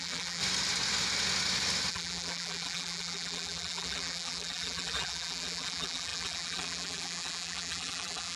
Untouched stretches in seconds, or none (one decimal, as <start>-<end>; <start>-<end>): 0.4-1.9